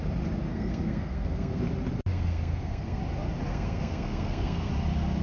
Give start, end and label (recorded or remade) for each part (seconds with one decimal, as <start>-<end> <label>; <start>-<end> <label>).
0.0-0.5 recorded; 0.5-1.6 remade; 1.6-2.1 recorded; 2.1-3.0 remade; 3.0-3.5 recorded; 3.5-4.7 remade; 4.7-5.2 recorded